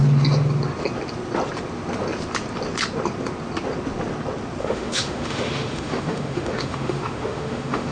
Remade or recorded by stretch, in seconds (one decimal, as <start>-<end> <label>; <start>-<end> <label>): 0.0-4.6 recorded; 4.6-7.9 remade